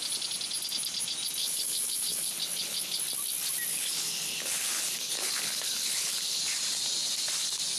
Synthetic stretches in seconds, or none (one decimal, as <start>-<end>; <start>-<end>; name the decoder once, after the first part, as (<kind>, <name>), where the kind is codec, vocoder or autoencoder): 1.4-3.0 (codec, HILCodec); 3.7-6.4